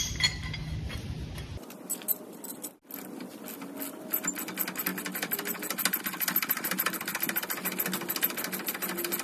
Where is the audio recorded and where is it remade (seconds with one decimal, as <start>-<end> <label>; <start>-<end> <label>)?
0.0-9.2 recorded